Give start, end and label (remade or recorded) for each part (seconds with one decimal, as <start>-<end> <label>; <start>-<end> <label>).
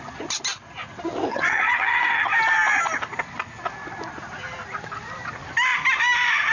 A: 0.0-1.3 recorded; 1.3-2.3 remade; 2.3-6.5 recorded